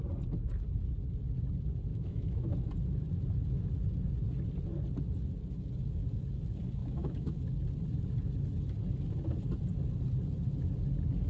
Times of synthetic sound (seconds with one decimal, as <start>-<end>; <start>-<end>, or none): 1.9-2.5; 6.8-7.4